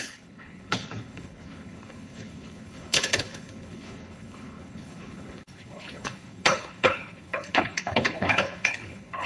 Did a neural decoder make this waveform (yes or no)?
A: yes